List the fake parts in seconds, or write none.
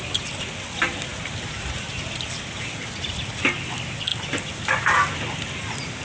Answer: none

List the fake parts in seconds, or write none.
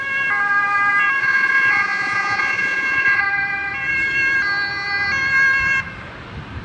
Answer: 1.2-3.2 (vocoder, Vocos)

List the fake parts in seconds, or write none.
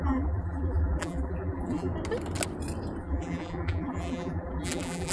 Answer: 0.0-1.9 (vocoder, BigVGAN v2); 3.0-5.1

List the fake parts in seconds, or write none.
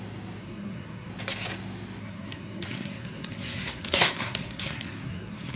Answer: 0.4-1.1 (codec, SNAC); 2.0-5.6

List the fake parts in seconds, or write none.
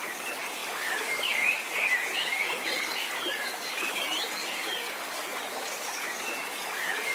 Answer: 0.0-7.1 (codec, DAC)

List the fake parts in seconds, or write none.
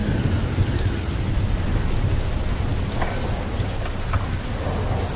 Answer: none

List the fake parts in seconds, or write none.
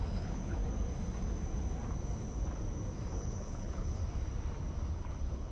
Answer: 0.0-0.6 (codec, HILCodec); 3.1-4.0; 4.9-5.5